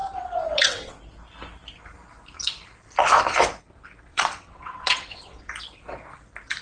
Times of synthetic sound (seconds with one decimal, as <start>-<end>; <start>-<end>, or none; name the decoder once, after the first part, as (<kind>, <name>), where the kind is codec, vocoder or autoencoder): 0.0-1.0 (vocoder, WaveNeXt); 4.1-5.5